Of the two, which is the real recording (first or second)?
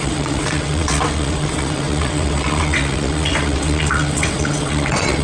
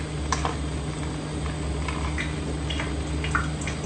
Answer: second